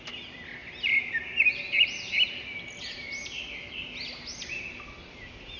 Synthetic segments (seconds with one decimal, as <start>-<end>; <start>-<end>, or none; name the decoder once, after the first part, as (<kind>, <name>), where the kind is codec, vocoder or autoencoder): none